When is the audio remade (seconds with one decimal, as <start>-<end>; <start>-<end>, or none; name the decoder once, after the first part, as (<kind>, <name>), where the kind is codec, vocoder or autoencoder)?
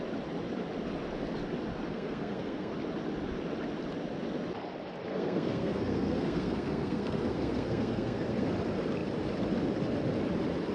1.9-2.7 (codec, SNAC); 5.1-8.5